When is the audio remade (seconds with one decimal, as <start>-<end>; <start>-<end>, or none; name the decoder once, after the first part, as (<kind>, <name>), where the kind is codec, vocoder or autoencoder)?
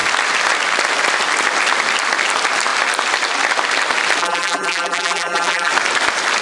4.2-5.7 (vocoder, BigVGAN v2)